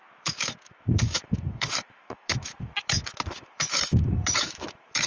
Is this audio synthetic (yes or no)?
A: yes